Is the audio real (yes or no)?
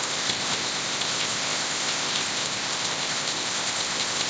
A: no